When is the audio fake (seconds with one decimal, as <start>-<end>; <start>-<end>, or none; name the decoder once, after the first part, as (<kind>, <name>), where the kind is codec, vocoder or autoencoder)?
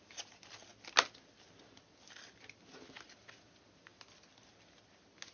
none